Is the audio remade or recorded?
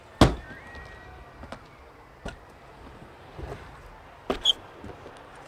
recorded